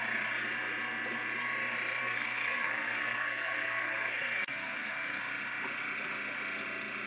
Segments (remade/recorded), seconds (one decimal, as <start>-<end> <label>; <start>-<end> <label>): 0.0-2.0 recorded; 2.0-5.2 remade; 5.2-7.1 recorded